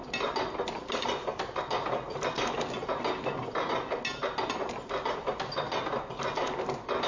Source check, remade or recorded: recorded